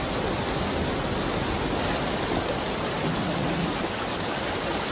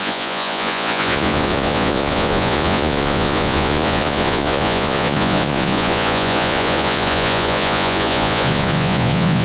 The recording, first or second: first